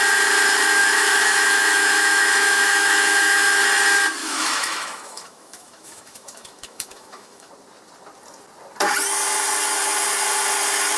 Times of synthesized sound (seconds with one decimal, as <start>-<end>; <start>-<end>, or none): 0.8-3.6; 4.2-7.5

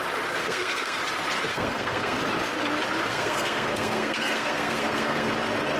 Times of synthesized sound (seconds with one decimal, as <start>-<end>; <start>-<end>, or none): 0.4-1.0; 1.5-2.2; 3.1-5.3

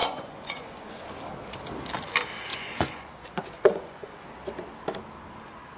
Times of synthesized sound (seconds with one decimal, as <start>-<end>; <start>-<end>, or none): 0.0-1.0; 2.5-4.1